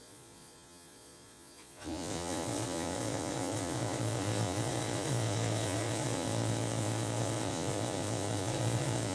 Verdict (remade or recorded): remade